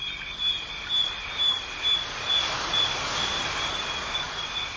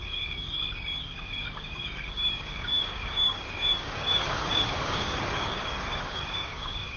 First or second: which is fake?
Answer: second